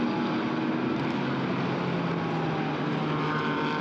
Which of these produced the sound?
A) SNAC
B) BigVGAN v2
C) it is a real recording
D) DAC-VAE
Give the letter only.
C